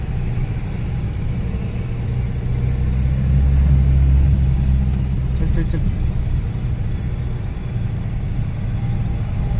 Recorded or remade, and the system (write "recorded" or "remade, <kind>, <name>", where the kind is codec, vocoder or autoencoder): recorded